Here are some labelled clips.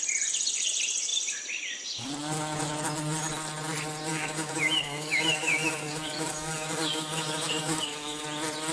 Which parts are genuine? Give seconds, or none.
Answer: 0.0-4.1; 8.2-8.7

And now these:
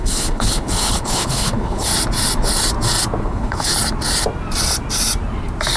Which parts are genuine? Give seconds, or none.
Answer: 1.9-3.2; 3.7-5.8

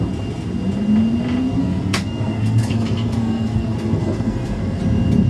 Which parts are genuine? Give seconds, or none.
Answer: 0.0-1.6; 4.8-5.3

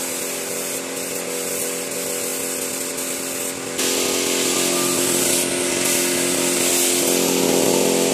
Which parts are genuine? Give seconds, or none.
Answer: 0.0-8.1